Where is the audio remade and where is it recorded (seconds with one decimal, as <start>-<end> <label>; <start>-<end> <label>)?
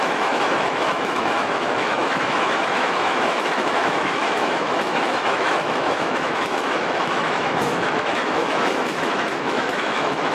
0.0-10.3 remade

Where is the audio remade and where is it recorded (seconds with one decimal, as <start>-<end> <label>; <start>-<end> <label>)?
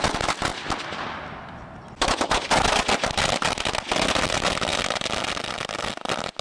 0.0-6.4 recorded